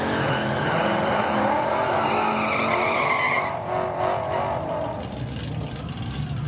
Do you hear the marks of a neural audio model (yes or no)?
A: no